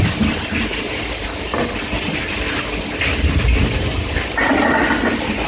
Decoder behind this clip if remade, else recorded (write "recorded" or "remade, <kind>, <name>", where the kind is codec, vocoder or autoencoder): recorded